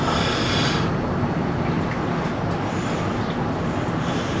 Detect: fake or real real